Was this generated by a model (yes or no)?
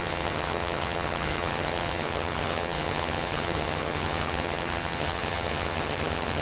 yes